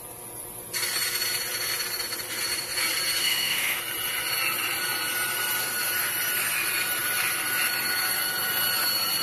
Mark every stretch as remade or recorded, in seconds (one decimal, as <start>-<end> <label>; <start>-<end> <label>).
0.0-3.2 recorded; 3.2-3.8 remade; 3.8-9.2 recorded

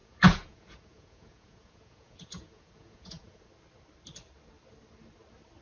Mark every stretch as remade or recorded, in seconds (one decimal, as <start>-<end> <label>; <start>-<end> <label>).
0.0-3.4 remade; 3.4-5.6 recorded

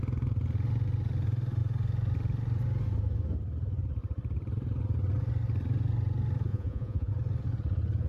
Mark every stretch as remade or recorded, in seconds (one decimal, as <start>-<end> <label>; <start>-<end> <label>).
0.0-6.5 recorded; 6.5-7.1 remade; 7.1-8.1 recorded

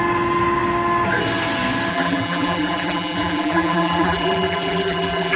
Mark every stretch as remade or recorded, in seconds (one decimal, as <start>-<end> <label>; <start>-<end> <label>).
0.0-1.9 recorded; 1.9-5.4 remade

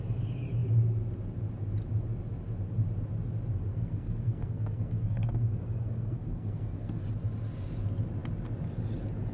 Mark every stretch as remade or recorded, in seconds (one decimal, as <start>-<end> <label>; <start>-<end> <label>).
0.0-3.7 recorded; 3.7-7.0 remade; 7.0-9.3 recorded

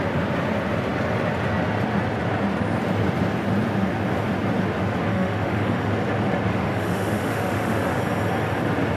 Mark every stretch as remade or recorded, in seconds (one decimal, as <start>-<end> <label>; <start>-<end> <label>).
0.0-5.1 recorded; 5.1-5.9 remade; 5.9-6.5 recorded; 6.5-8.0 remade; 8.0-9.0 recorded

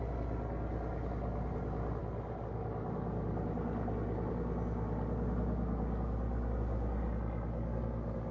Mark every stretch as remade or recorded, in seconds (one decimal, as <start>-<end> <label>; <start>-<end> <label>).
0.0-8.3 recorded

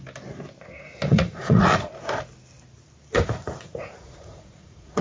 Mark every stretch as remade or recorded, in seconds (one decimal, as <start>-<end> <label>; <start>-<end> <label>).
0.0-1.1 recorded; 1.1-1.9 remade; 1.9-3.4 recorded; 3.4-5.0 remade